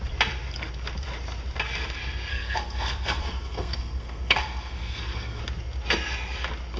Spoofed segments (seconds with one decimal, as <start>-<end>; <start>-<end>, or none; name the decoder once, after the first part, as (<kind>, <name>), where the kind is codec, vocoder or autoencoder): 2.3-5.4 (codec, SNAC)